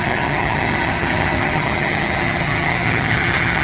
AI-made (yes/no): yes